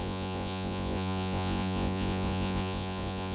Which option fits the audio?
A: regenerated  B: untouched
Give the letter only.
A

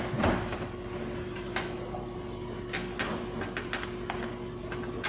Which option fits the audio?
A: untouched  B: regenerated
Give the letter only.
A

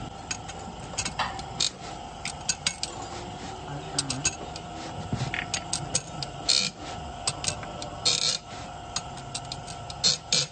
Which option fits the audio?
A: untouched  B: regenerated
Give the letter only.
A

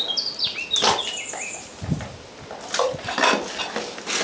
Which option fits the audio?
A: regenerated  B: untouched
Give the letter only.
B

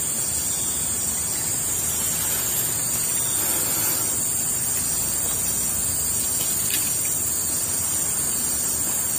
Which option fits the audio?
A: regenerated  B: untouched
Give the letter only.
B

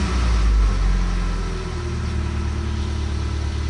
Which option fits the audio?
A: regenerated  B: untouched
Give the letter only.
B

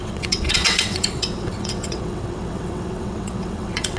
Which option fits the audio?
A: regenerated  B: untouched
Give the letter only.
A